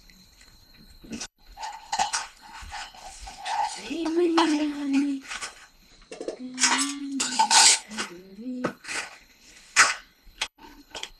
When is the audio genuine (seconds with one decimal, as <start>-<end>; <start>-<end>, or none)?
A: 5.9-7.0